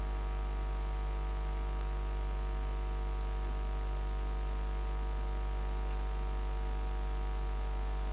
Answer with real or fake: real